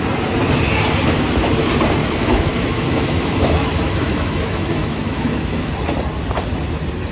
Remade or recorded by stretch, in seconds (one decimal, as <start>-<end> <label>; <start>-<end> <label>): 0.0-2.0 recorded; 2.0-5.7 remade; 5.7-7.1 recorded